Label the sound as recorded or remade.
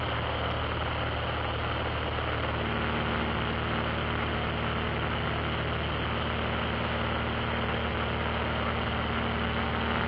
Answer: recorded